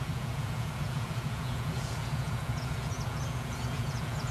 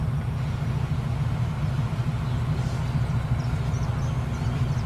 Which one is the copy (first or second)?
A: first